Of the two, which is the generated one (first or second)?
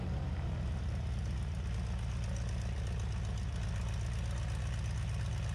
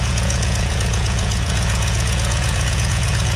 second